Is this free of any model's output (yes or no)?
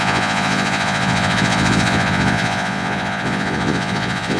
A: no